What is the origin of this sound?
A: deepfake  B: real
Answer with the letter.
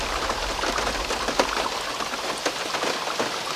B